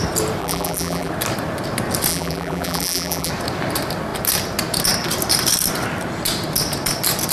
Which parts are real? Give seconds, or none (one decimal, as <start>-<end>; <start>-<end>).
0.0-0.4; 1.1-2.1; 3.3-7.3